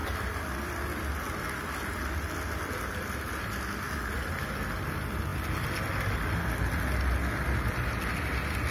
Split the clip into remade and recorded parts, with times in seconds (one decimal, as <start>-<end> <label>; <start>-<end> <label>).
0.0-0.7 remade; 0.7-8.7 recorded